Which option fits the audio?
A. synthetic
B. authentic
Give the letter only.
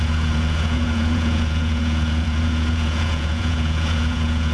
A